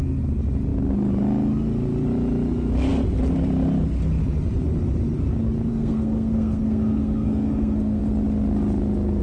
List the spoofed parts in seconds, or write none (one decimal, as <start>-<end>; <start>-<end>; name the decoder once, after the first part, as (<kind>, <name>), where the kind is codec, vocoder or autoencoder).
5.7-8.0 (codec, SNAC)